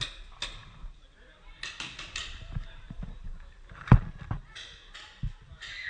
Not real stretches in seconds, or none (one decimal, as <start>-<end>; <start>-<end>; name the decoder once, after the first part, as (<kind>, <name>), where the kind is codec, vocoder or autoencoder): 2.2-3.9 (vocoder, BigVGAN v2)